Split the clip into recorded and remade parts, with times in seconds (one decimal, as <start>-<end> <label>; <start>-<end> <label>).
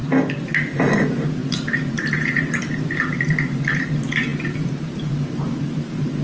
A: 0.0-0.8 recorded; 0.8-6.2 remade